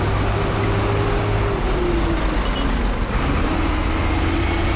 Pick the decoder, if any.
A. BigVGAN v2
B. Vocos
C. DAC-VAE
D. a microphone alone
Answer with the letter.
D